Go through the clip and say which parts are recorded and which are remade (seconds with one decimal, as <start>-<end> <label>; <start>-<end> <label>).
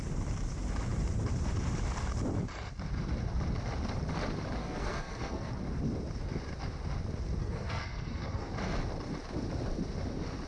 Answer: 0.0-4.6 recorded; 4.6-5.5 remade; 5.5-7.4 recorded; 7.4-8.5 remade; 8.5-10.5 recorded